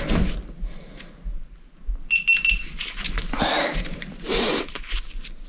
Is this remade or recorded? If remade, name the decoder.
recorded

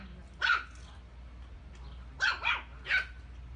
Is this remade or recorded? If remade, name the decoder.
recorded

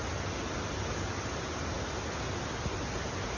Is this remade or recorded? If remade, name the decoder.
recorded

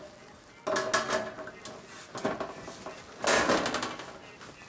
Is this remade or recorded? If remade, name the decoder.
recorded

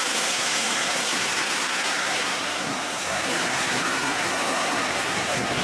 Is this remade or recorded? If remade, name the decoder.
remade, codec, SNAC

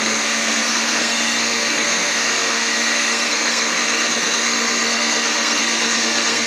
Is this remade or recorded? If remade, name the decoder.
remade, codec, SNAC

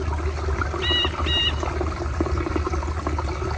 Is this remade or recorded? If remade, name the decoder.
recorded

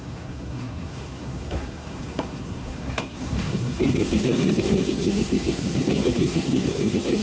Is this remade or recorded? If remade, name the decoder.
remade, codec, SNAC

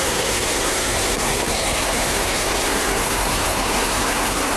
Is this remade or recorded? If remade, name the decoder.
remade, codec, SNAC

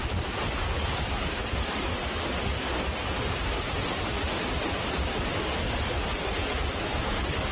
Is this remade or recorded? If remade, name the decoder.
recorded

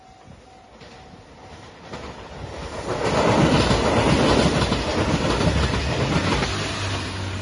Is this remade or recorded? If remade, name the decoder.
recorded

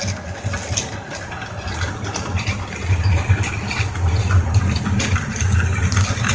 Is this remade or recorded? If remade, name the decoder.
recorded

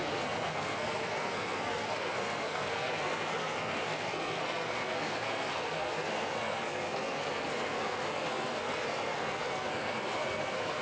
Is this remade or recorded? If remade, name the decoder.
remade, codec, SNAC